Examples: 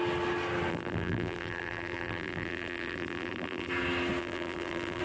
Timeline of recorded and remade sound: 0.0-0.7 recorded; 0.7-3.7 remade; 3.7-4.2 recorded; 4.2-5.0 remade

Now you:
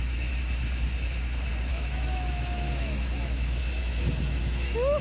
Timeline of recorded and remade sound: 0.0-1.7 recorded; 1.7-5.0 remade